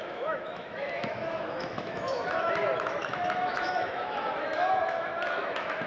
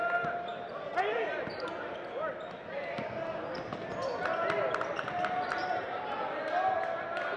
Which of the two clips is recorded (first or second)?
second